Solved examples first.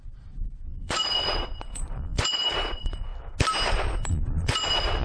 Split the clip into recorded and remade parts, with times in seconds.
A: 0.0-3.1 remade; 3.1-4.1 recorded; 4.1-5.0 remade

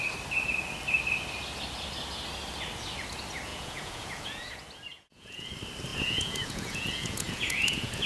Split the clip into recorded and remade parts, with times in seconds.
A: 0.0-3.5 recorded; 3.5-4.5 remade; 4.5-4.9 recorded; 4.9-5.5 remade; 5.5-5.9 recorded; 5.9-8.1 remade